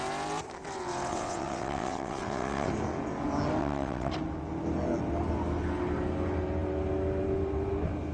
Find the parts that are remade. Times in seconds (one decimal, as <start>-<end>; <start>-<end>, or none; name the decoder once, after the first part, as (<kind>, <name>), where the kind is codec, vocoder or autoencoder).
1.1-2.7 (vocoder, WaveNeXt); 3.6-4.1